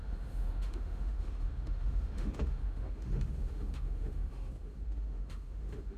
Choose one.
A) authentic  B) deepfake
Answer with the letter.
B